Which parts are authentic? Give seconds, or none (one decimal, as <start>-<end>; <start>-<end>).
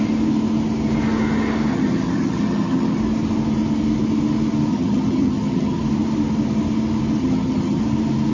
0.0-1.7; 3.0-4.7; 5.8-7.2; 7.8-8.3